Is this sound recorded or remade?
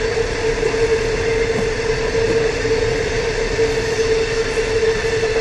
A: recorded